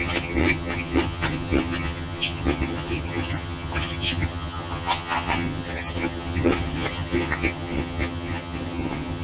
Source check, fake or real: fake